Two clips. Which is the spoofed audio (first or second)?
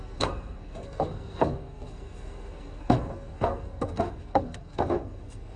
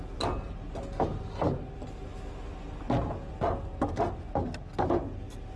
first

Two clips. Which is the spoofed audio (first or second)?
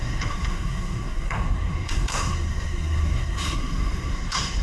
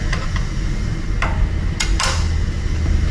first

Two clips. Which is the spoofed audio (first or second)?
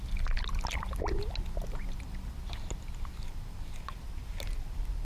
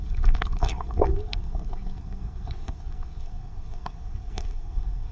second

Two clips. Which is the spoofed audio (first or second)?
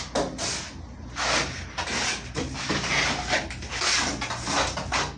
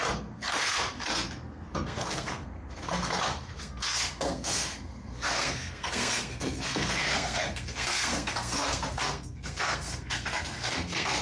second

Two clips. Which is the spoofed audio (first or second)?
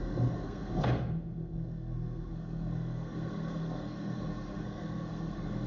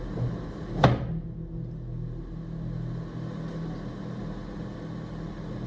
first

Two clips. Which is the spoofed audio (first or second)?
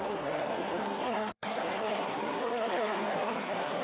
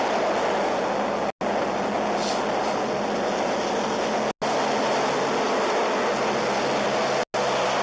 first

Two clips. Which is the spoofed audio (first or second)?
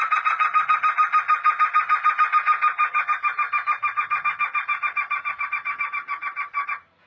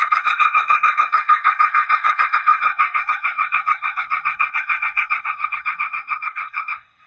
second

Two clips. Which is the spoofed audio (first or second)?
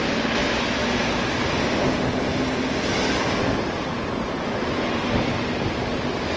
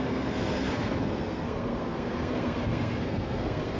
second